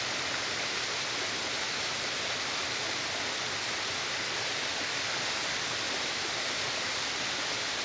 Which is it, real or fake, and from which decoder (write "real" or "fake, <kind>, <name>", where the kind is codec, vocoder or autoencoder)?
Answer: real